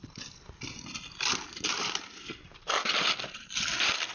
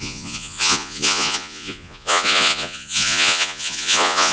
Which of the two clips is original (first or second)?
first